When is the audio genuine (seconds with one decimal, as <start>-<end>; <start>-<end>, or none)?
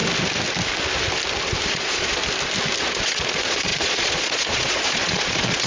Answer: 0.0-1.7; 2.2-2.8